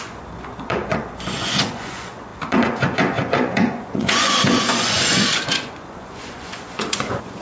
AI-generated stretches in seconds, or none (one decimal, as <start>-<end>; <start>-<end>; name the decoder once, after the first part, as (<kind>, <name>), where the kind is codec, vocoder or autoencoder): 0.0-7.4 (vocoder, Vocos)